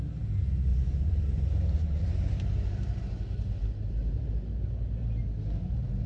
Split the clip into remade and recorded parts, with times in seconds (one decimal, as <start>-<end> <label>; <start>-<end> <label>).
0.0-0.7 recorded; 0.7-4.3 remade; 4.3-6.1 recorded